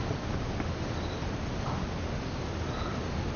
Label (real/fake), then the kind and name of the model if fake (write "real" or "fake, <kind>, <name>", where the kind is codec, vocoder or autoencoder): real